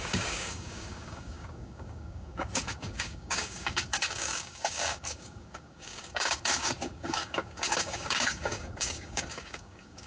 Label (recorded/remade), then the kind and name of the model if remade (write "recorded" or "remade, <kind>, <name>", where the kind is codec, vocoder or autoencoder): remade, codec, DAC